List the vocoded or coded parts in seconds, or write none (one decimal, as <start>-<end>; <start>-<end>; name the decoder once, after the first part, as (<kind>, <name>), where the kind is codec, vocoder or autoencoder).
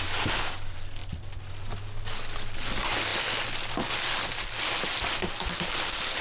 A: none